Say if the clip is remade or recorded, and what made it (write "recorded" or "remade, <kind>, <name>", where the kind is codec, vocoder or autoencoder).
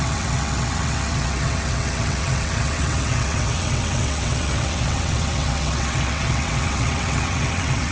remade, vocoder, WaveNeXt